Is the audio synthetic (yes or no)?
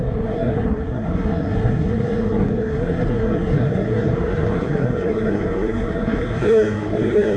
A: yes